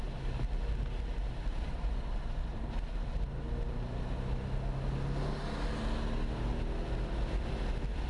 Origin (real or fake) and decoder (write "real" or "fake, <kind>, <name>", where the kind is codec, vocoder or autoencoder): real